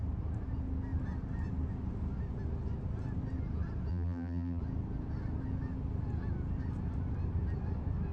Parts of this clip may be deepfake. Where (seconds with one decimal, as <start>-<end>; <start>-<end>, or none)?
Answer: 3.9-4.6